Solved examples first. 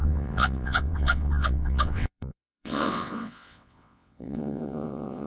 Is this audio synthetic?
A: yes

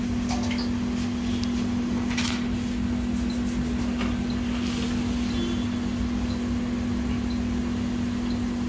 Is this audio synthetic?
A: no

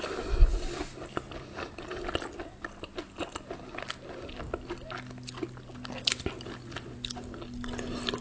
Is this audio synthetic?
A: no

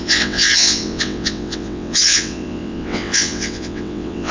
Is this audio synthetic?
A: yes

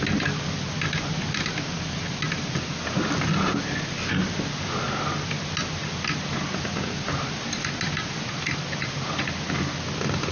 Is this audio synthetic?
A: no